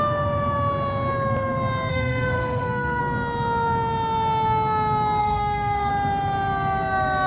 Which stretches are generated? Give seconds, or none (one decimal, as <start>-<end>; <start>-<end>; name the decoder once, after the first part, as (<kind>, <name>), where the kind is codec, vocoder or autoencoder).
1.9-3.0 (codec, SNAC); 5.2-5.9